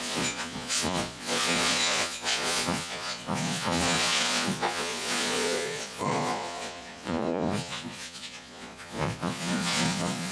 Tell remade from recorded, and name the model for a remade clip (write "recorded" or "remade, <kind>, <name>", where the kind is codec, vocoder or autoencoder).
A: remade, vocoder, Vocos